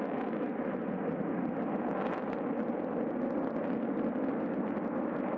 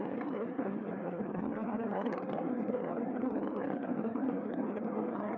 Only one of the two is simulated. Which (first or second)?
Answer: second